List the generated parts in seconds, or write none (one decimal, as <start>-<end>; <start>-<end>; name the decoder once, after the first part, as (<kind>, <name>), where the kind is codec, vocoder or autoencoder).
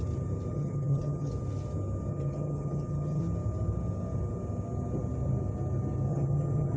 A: 0.5-1.3 (vocoder, HiFi-GAN); 2.1-3.2; 6.1-6.8